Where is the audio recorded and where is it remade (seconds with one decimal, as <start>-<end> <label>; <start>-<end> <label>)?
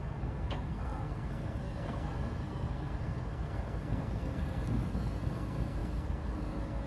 0.0-6.9 remade